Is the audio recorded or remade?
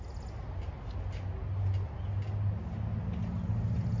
recorded